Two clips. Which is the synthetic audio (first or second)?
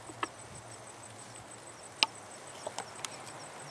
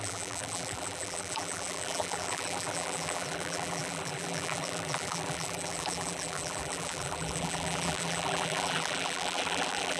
second